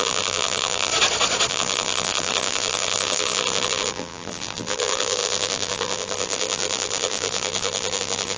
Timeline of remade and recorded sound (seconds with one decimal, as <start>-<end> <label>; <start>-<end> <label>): 0.0-0.9 remade; 0.9-1.5 recorded; 1.5-8.4 remade